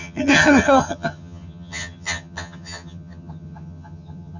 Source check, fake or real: fake